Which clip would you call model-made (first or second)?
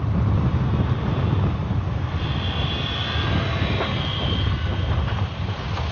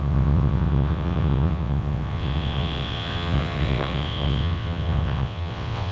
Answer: second